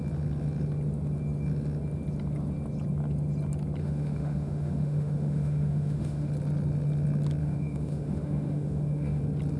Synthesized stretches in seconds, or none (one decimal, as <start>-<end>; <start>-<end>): 3.8-6.3; 7.4-9.2